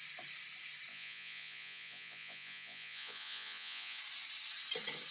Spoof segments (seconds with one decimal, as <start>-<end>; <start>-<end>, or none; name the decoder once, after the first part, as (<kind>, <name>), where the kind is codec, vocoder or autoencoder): 0.9-4.0 (vocoder, Vocos)